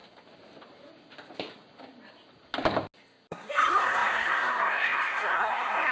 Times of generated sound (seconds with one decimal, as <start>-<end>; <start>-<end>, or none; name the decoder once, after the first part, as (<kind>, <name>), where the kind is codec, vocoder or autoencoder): 3.3-5.9 (codec, SNAC)